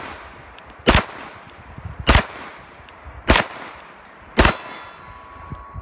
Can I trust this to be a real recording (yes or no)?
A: yes